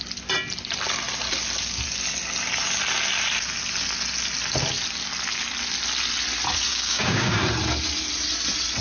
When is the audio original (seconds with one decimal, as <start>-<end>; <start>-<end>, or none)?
0.0-6.7; 7.4-8.8